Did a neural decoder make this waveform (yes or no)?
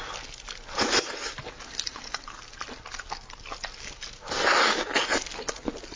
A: no